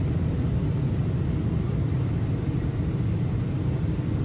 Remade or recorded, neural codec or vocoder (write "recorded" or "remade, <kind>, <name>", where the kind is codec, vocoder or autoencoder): recorded